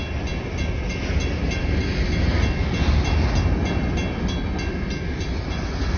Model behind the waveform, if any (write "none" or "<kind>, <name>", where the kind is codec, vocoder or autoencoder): none